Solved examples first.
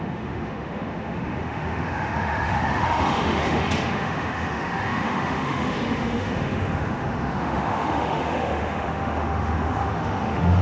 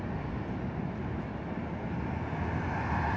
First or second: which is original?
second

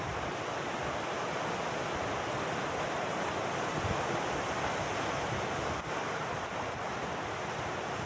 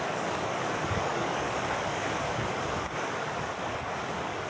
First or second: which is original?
first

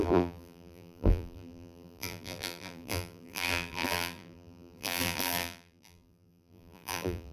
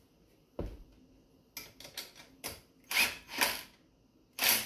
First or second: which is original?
second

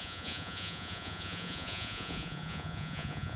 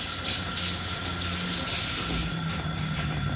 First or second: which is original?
second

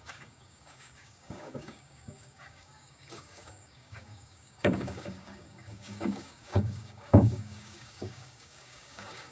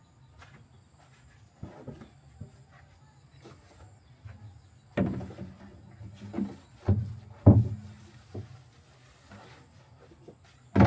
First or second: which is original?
second